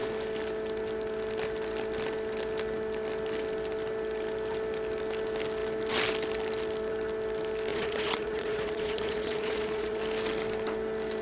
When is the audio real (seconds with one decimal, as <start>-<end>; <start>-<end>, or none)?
0.0-7.7; 10.0-11.2